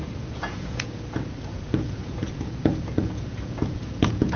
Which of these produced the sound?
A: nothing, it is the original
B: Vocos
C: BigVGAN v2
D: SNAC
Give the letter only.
B